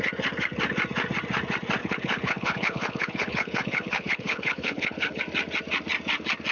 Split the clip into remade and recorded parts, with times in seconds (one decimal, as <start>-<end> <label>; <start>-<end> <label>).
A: 0.0-1.8 recorded; 1.8-5.2 remade; 5.2-6.5 recorded